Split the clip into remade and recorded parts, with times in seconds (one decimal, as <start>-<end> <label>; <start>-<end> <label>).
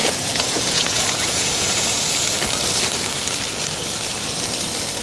0.0-2.1 remade; 2.1-5.0 recorded